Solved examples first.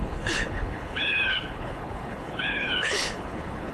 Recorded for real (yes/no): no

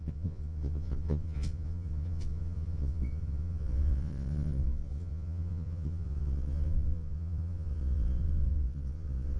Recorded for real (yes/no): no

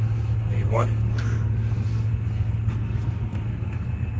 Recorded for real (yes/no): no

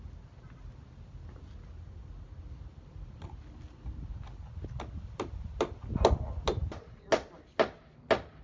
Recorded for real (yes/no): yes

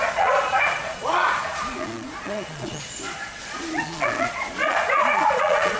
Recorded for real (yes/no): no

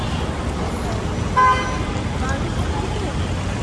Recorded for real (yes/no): yes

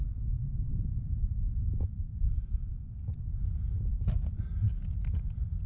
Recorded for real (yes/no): yes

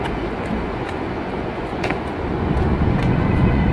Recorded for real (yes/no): no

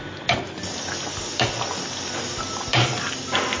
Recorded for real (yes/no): yes